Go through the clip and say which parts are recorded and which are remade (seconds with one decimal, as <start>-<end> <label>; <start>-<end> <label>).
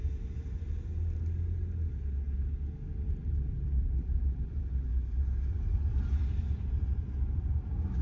0.0-3.2 recorded; 3.2-5.2 remade; 5.2-8.0 recorded